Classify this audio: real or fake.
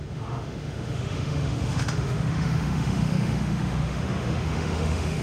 fake